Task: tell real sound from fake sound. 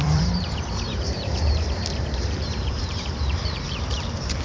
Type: fake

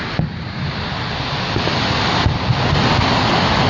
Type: real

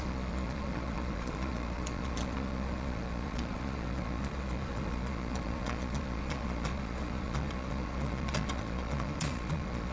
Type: fake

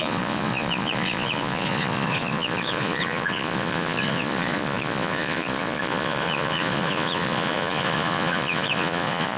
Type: fake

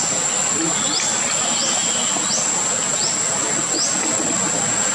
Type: real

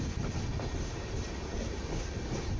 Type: real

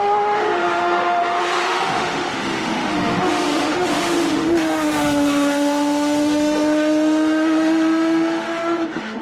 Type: fake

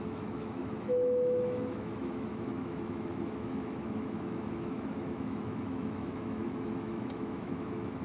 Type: fake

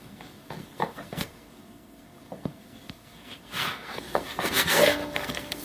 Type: fake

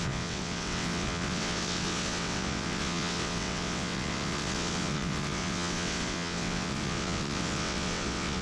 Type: fake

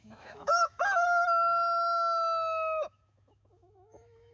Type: fake